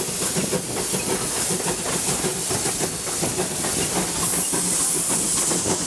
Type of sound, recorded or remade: recorded